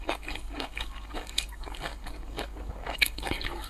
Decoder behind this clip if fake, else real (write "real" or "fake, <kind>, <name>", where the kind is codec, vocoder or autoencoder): fake, codec, DAC